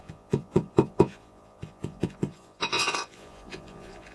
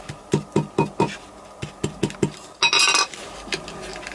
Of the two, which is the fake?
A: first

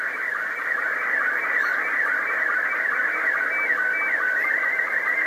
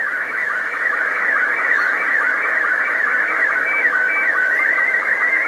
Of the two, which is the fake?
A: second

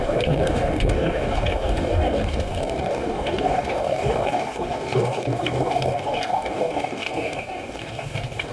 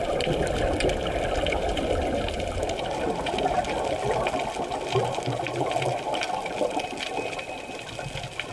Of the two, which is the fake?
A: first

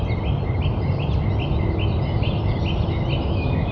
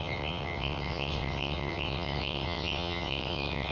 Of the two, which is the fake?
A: second